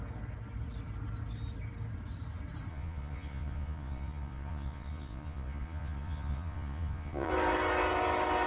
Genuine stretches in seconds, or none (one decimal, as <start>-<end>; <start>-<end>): 0.0-2.7; 7.3-8.5